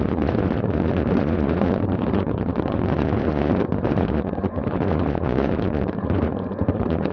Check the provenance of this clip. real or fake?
fake